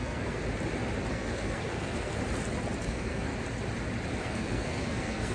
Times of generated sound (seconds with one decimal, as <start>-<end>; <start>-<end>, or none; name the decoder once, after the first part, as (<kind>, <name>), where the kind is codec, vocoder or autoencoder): 0.0-0.4 (codec, SNAC); 1.1-2.2; 2.8-3.3; 4.2-5.3